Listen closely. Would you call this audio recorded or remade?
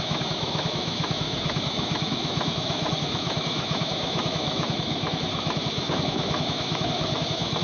remade